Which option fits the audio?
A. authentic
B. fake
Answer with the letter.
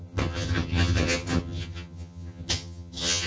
B